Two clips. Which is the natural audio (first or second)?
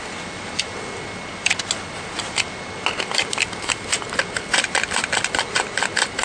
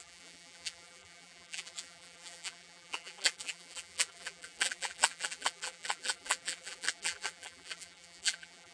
first